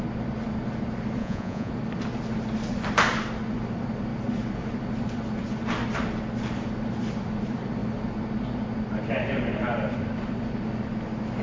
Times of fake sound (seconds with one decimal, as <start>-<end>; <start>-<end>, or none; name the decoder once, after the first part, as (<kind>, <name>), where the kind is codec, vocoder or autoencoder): 1.2-1.7 (vocoder, Vocos)